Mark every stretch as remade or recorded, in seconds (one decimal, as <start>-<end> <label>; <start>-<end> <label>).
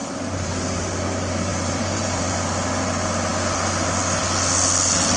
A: 0.0-0.5 remade; 0.5-1.5 recorded; 1.5-2.2 remade; 2.2-5.2 recorded